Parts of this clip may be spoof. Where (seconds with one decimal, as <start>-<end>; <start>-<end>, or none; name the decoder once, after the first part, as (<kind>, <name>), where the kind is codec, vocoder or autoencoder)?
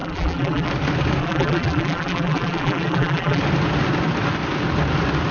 0.0-0.7 (vocoder, BigVGAN v2); 1.2-3.4